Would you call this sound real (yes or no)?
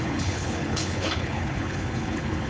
no